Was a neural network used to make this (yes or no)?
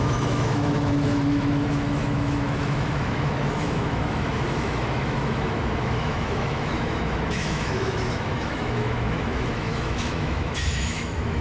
yes